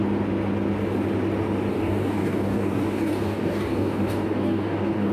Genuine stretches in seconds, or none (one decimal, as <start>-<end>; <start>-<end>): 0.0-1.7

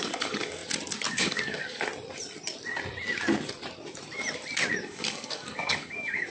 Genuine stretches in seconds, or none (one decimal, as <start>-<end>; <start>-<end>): 0.6-1.1; 1.9-4.8

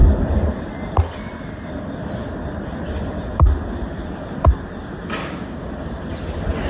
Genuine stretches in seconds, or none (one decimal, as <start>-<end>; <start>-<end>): 0.0-5.2; 5.7-6.7

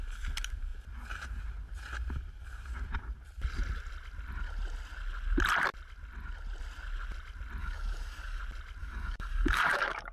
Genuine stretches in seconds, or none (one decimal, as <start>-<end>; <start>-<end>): 0.0-7.6; 8.4-8.8